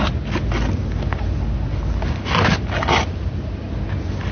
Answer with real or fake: real